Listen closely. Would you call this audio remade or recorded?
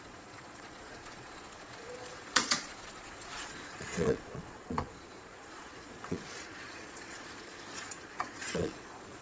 remade